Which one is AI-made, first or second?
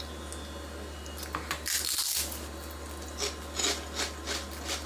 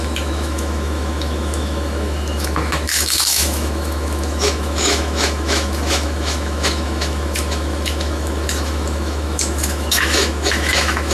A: second